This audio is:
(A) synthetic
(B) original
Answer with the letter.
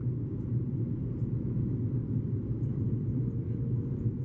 B